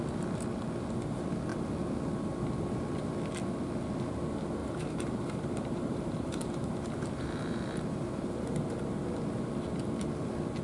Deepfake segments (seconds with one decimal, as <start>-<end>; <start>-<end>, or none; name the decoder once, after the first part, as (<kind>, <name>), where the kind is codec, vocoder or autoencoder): 4.6-8.7 (vocoder, BigVGAN v2)